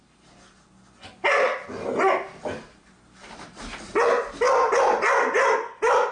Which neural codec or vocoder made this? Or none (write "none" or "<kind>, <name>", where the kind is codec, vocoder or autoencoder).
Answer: none